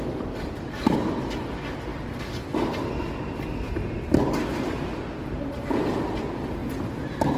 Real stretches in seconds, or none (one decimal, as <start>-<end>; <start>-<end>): 0.0-7.4